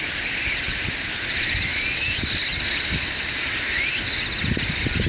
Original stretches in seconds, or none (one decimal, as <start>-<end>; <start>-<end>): 0.0-5.1